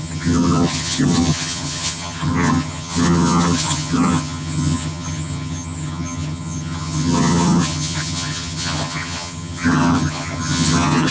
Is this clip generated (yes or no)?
yes